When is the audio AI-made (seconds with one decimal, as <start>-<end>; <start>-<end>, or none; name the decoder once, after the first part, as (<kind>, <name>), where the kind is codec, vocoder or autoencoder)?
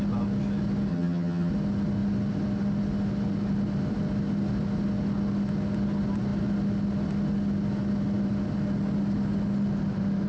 0.9-1.5 (vocoder, HiFi-GAN)